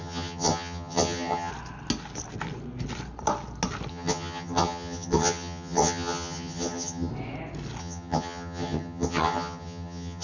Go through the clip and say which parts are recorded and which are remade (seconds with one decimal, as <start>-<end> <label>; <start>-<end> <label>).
0.0-1.5 remade; 1.5-3.9 recorded; 3.9-7.1 remade; 7.1-7.8 recorded; 7.8-10.2 remade